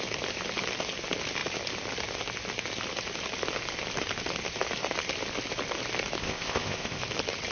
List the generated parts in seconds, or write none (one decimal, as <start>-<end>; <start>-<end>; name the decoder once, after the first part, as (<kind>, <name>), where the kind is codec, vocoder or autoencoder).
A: 6.2-7.0 (codec, ZipCodec)

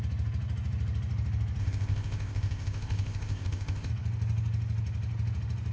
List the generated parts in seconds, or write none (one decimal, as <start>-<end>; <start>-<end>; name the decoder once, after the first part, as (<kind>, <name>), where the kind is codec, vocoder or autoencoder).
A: 1.6-3.9 (codec, ZipCodec)